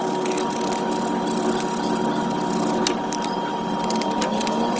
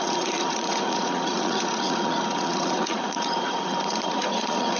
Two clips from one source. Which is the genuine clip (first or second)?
first